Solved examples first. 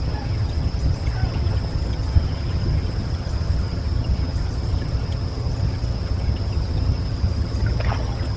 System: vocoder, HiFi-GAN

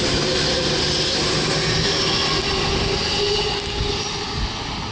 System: none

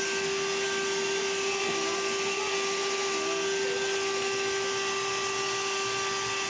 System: none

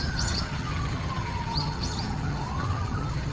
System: vocoder, HiFi-GAN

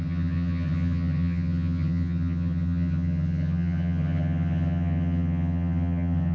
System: vocoder, HiFi-GAN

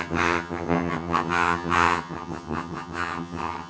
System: vocoder, HiFi-GAN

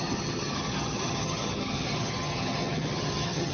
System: vocoder, HiFi-GAN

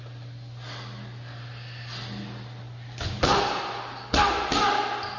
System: none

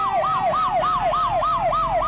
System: none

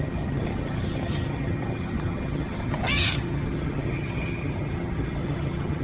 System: vocoder, HiFi-GAN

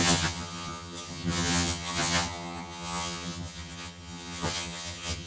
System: vocoder, HiFi-GAN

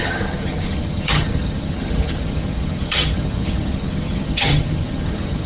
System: vocoder, HiFi-GAN